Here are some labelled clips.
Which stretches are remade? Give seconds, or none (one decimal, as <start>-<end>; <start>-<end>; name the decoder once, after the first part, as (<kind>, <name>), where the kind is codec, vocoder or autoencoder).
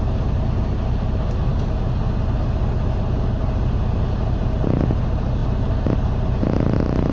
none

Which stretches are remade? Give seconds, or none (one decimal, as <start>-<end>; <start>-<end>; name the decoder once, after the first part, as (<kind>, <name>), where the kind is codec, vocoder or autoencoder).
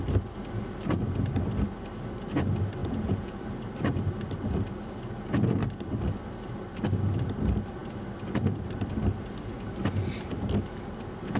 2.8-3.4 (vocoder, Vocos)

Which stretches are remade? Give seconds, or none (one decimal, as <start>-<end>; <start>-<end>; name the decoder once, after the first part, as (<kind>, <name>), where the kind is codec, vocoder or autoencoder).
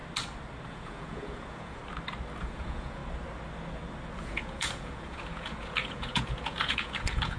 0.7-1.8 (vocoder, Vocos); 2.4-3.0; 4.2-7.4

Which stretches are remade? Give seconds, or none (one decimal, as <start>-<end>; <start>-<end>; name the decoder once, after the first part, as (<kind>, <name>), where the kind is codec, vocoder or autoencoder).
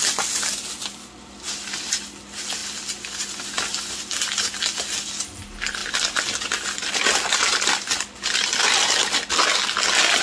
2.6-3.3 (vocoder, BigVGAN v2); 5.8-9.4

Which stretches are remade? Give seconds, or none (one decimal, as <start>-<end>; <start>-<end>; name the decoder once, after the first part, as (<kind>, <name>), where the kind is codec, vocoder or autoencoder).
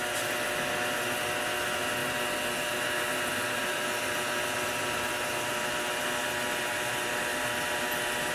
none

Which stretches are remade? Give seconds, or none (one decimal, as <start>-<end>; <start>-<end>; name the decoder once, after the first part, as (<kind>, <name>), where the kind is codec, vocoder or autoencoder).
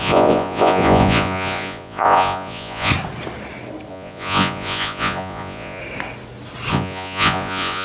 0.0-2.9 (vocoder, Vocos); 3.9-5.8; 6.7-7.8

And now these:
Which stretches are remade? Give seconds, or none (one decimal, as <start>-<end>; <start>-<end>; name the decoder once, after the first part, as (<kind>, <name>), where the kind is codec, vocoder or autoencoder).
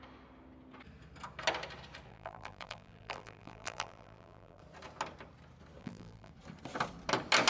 2.1-4.6 (vocoder, BigVGAN v2); 5.8-6.3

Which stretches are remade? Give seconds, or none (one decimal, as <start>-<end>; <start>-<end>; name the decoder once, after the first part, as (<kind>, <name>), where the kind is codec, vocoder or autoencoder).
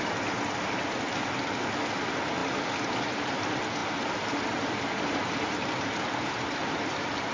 none